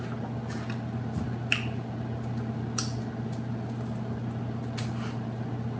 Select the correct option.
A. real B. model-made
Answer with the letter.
A